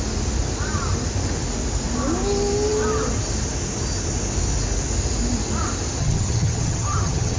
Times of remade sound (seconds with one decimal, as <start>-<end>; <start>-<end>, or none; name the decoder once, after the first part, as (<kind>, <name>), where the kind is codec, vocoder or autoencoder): 6.0-7.4 (vocoder, HiFi-GAN)